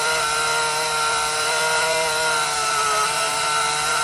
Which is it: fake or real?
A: fake